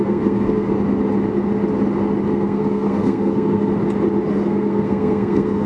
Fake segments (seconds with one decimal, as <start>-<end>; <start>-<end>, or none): 0.0-0.7; 2.3-3.7; 4.3-5.7